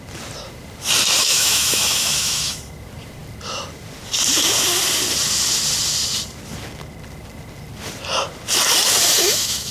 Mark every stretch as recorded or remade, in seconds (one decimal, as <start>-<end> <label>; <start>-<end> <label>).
0.0-1.2 recorded; 1.2-2.6 remade; 2.6-9.2 recorded; 9.2-9.7 remade